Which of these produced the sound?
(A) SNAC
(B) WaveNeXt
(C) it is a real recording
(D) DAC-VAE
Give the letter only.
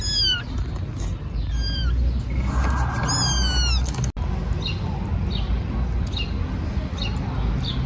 C